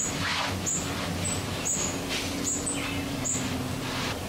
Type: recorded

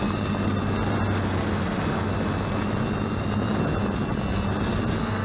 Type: recorded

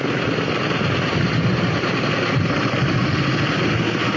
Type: recorded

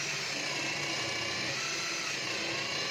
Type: recorded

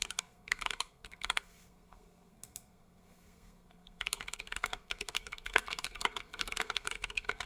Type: remade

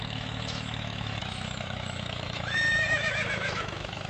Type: remade